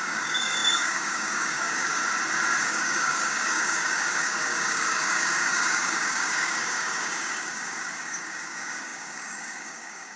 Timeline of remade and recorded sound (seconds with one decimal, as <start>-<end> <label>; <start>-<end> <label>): 0.0-2.0 remade; 2.0-2.6 recorded; 2.6-10.2 remade

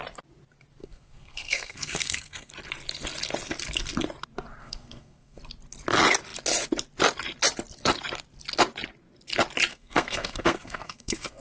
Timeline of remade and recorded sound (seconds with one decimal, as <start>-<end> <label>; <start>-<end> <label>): 0.0-0.8 recorded; 0.8-2.5 remade; 2.5-4.6 recorded; 4.6-5.4 remade; 5.4-9.7 recorded; 9.7-11.4 remade

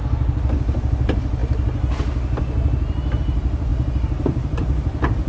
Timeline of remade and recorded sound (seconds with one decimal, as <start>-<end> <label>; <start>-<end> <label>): 0.0-3.7 recorded; 3.7-5.3 remade

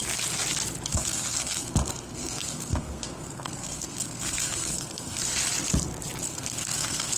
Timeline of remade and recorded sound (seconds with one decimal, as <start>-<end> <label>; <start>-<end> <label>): 0.0-0.9 recorded; 0.9-5.2 remade; 5.2-6.2 recorded; 6.2-7.2 remade

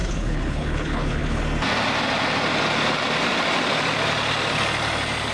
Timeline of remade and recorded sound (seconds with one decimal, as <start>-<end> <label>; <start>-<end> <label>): 0.0-1.4 remade; 1.4-5.3 recorded

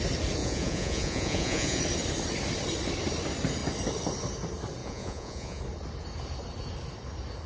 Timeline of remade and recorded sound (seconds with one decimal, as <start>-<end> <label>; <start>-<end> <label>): 0.0-0.4 recorded; 0.4-1.8 remade; 1.8-4.8 recorded; 4.8-5.6 remade; 5.6-7.5 recorded

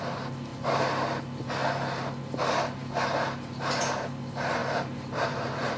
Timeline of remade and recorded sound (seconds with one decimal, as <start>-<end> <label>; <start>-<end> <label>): 0.0-4.6 recorded; 4.6-5.8 remade

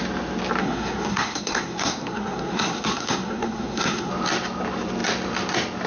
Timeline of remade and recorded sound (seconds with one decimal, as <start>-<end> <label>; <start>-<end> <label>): 0.0-0.6 recorded; 0.6-4.1 remade; 4.1-5.9 recorded